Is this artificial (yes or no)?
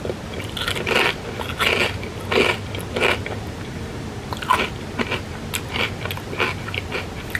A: no